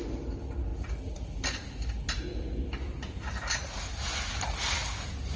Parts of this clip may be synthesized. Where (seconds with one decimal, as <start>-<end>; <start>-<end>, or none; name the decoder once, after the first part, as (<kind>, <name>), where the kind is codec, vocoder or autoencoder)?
none